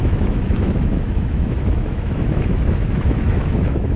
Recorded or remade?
remade